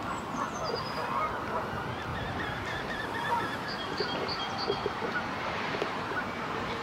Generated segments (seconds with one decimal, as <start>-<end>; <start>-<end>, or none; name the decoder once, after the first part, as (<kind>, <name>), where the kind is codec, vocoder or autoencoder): 2.1-6.2 (vocoder, BigVGAN v2)